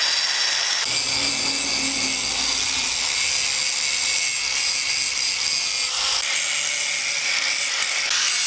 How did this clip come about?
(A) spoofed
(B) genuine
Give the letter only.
B